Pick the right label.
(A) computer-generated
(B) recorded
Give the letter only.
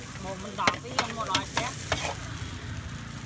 B